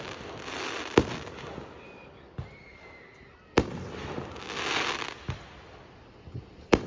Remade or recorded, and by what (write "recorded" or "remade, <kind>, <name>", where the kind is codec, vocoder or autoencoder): recorded